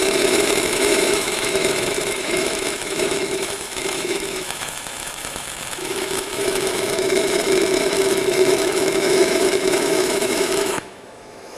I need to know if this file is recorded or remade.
remade